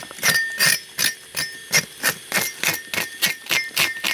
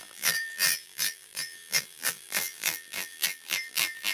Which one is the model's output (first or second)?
second